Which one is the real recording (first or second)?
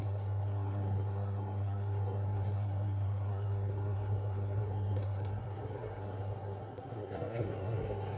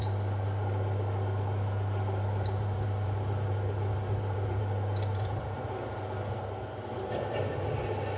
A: second